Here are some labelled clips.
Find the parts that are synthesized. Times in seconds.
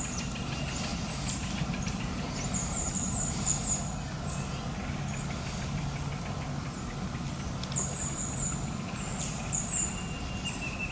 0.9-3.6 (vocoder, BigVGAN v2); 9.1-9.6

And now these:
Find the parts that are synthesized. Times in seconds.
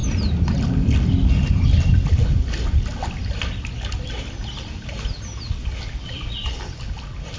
none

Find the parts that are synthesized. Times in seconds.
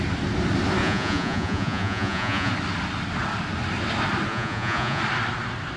0.8-2.5 (vocoder, Vocos); 4.3-5.0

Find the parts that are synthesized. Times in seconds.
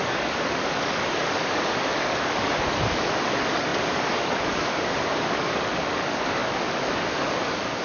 0.0-7.8 (codec, DAC)